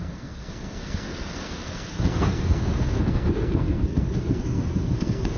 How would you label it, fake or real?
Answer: fake